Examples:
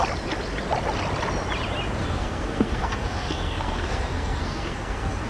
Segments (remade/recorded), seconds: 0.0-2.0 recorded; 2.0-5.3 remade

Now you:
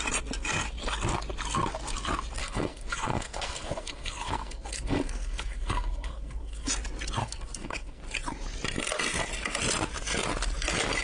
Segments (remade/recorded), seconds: 0.0-2.4 recorded; 2.4-6.7 remade; 6.7-7.2 recorded; 7.2-8.0 remade; 8.0-11.0 recorded

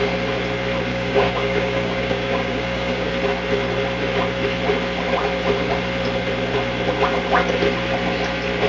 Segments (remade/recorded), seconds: 0.0-0.9 recorded; 0.9-3.1 remade; 3.1-8.7 recorded

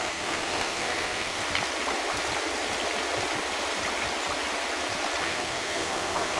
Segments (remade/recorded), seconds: 0.0-1.4 remade; 1.4-5.2 recorded; 5.2-6.4 remade

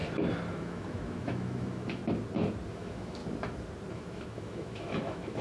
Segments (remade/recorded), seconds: 0.0-0.5 recorded; 0.5-2.0 remade; 2.0-2.7 recorded; 2.7-3.2 remade; 3.2-3.9 recorded; 3.9-5.4 remade

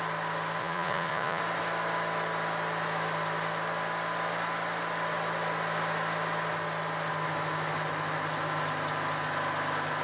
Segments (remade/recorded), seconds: 0.0-0.6 recorded; 0.6-1.4 remade; 1.4-10.0 recorded

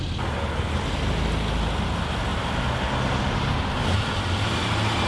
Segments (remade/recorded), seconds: 0.0-5.1 recorded

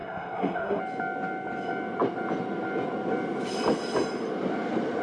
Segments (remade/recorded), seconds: 0.0-0.8 remade; 0.8-5.0 recorded